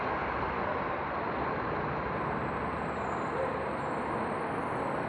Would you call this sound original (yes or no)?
yes